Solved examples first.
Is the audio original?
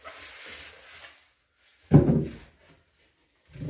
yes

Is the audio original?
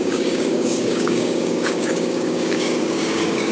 no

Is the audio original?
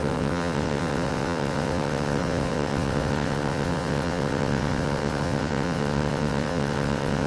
no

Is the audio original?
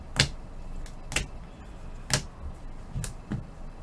yes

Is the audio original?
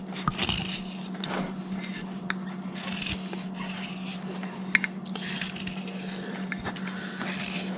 yes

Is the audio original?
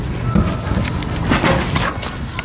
yes